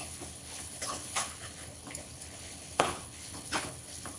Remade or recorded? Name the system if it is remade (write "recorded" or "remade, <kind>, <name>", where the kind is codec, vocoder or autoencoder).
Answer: remade, codec, HILCodec